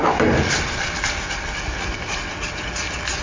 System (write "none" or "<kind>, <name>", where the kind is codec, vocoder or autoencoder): none